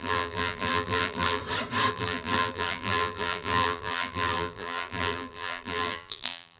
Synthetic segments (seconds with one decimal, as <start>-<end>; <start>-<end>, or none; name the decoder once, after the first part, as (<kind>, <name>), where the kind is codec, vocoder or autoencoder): 0.0-1.4 (vocoder, BigVGAN v2); 1.9-6.6